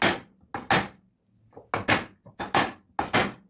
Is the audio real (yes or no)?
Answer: yes